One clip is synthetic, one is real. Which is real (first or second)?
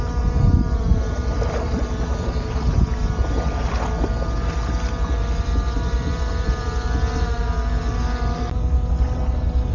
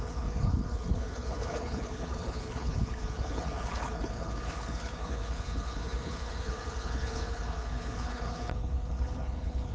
first